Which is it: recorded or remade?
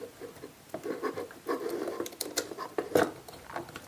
recorded